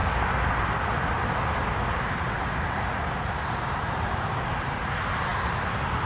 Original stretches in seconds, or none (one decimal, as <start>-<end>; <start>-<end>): 0.0-6.1